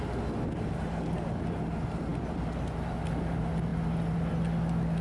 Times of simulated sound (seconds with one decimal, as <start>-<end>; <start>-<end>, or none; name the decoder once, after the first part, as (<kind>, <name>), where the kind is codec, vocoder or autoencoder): none